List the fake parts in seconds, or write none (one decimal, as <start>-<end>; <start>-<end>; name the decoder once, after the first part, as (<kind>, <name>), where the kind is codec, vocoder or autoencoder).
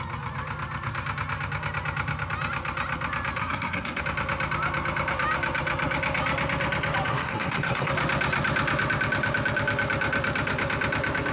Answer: 3.4-4.0 (codec, SNAC); 7.1-7.9